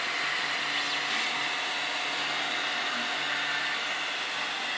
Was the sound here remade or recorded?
recorded